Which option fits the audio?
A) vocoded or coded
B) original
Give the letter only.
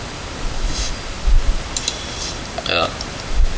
B